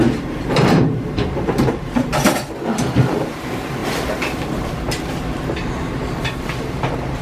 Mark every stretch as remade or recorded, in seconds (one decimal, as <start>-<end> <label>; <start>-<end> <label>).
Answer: 0.0-2.1 remade; 2.1-2.8 recorded; 2.8-3.8 remade; 3.8-6.6 recorded; 6.6-7.2 remade